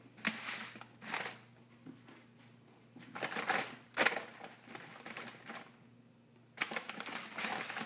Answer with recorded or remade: recorded